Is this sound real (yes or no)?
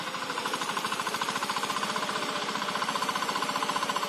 no